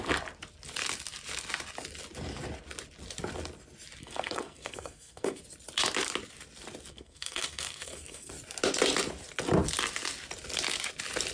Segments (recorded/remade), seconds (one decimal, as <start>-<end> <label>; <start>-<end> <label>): 0.0-4.0 recorded; 4.0-5.4 remade; 5.4-6.9 recorded; 6.9-8.3 remade; 8.3-11.3 recorded